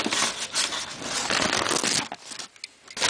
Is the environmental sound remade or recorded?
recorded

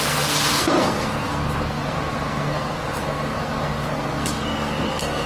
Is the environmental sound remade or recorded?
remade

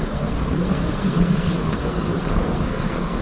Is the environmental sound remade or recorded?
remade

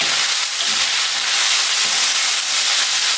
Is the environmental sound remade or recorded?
recorded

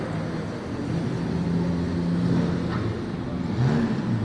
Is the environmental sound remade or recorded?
recorded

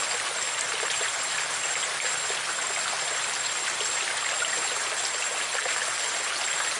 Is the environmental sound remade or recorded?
recorded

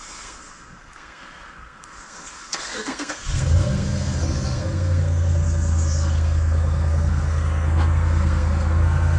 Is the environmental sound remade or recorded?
remade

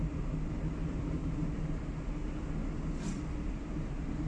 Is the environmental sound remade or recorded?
recorded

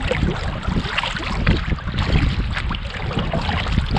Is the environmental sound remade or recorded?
recorded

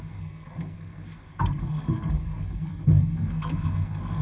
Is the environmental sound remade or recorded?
remade